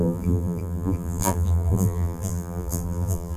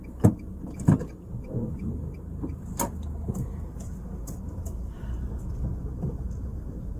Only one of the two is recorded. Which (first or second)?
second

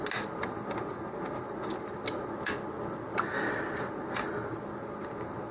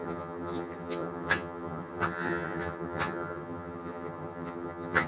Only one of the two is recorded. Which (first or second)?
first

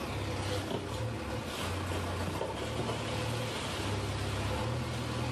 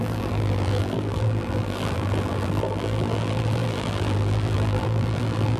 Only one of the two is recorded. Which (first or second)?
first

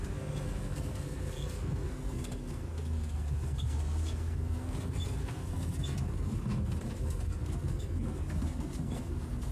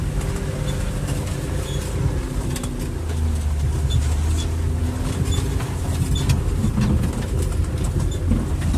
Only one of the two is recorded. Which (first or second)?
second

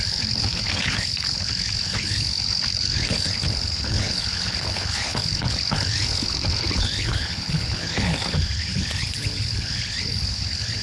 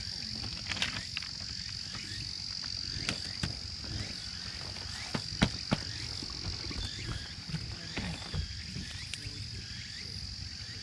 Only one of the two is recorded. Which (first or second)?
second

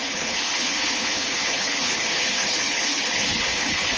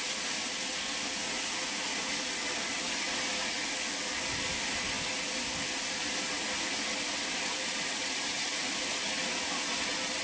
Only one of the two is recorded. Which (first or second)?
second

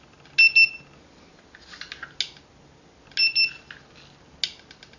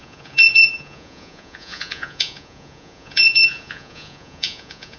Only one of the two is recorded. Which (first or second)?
first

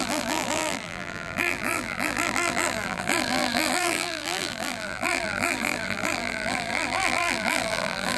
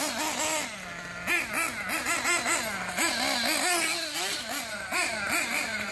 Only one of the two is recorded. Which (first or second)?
second